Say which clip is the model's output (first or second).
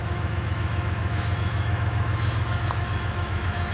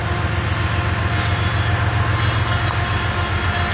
first